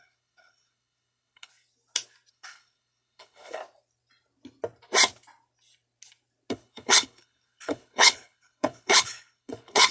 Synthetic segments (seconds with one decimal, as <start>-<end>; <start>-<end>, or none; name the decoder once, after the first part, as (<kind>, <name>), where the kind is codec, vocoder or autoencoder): 0.0-1.5 (codec, HILCodec); 2.3-3.6; 6.5-9.9